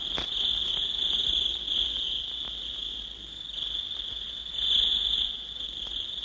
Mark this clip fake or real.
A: real